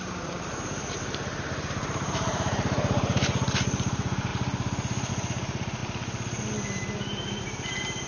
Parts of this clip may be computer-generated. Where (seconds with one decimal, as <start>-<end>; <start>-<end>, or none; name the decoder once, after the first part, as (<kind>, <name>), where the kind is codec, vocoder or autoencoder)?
0.0-4.3 (vocoder, BigVGAN v2); 5.1-5.8; 7.4-8.1